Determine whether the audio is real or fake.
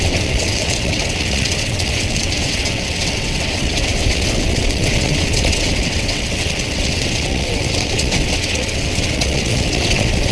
fake